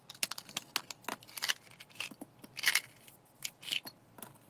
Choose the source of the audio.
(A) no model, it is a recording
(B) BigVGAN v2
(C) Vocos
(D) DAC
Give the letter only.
A